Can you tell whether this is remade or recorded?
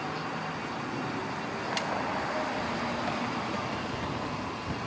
recorded